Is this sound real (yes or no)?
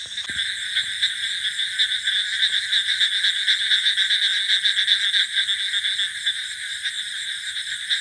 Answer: yes